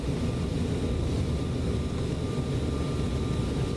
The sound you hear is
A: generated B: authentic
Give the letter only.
B